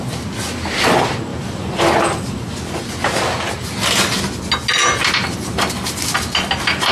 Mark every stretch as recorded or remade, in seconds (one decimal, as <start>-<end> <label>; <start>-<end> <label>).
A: 0.0-1.3 recorded; 1.3-2.5 remade; 2.5-6.9 recorded